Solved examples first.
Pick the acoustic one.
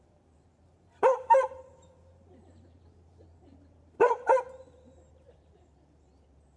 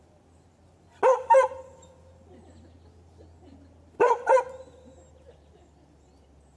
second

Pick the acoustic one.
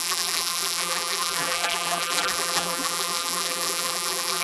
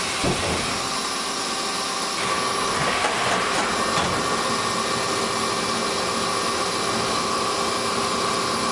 second